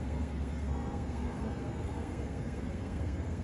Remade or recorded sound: remade